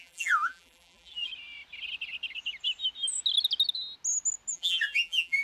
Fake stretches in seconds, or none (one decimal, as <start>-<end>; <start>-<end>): 0.0-1.3; 4.5-5.4